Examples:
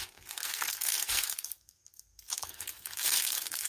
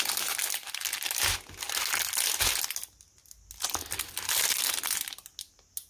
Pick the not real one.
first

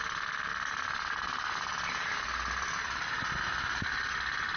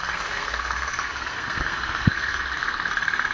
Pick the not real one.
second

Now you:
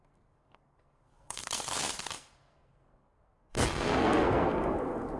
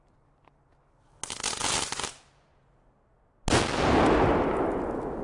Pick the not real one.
first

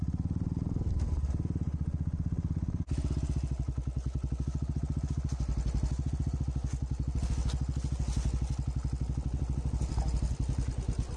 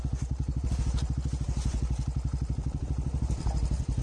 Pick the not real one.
second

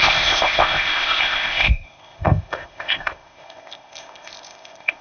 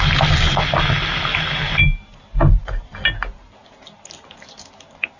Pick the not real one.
first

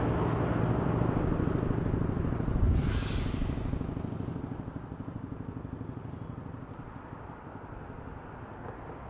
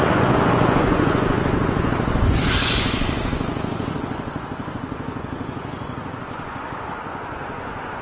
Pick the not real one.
second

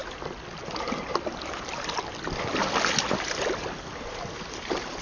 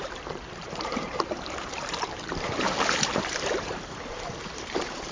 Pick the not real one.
second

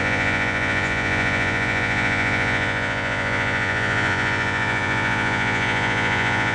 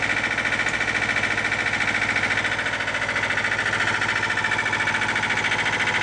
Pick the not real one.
first